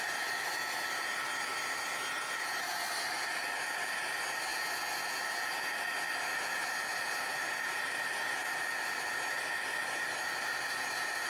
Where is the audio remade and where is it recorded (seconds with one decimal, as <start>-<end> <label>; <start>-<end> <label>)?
0.0-11.3 recorded